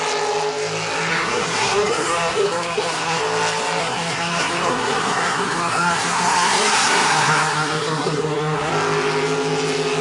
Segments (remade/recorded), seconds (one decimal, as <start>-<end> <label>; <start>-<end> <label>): 0.0-1.1 recorded; 1.1-3.2 remade; 3.2-3.8 recorded; 3.8-8.7 remade; 8.7-10.0 recorded